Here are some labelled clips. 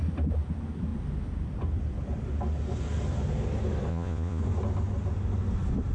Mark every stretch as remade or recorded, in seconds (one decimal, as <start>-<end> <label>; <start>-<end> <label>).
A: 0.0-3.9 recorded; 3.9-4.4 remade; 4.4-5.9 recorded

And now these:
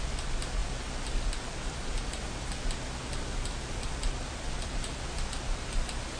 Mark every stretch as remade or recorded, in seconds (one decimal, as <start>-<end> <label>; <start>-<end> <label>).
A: 0.0-6.2 recorded

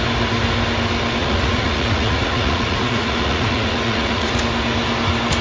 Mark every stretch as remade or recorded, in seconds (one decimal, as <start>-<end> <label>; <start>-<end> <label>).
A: 0.0-1.2 recorded; 1.2-4.4 remade; 4.4-5.4 recorded

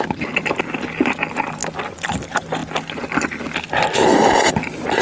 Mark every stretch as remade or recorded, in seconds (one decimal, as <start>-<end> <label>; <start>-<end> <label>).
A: 0.0-5.0 recorded

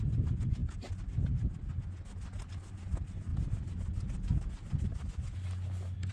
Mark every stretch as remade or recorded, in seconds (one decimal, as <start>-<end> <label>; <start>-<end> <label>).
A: 0.0-6.1 recorded

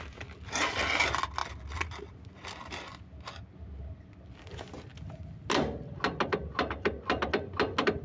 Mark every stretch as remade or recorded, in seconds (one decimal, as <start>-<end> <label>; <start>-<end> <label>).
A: 0.0-8.0 recorded